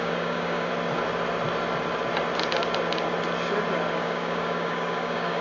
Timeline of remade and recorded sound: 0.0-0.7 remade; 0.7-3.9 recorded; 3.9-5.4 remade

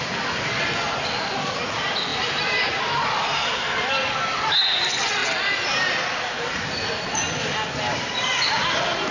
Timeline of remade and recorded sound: 0.0-9.1 recorded

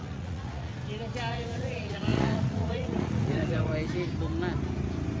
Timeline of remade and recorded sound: 0.0-0.7 remade; 0.7-1.3 recorded; 1.3-3.7 remade; 3.7-5.2 recorded

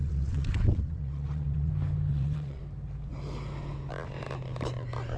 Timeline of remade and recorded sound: 0.0-1.7 remade; 1.7-2.1 recorded; 2.1-2.6 remade; 2.6-5.2 recorded

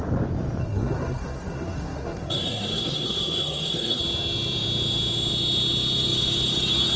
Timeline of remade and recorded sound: 0.0-0.6 recorded; 0.6-4.0 remade; 4.0-7.0 recorded

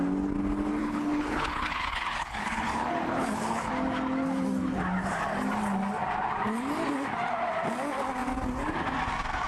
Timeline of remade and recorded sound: 0.0-0.8 recorded; 0.8-3.7 remade; 3.7-9.5 recorded